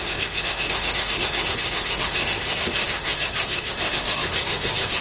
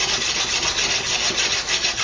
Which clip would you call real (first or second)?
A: second